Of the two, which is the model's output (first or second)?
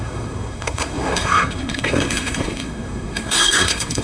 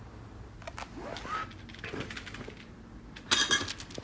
first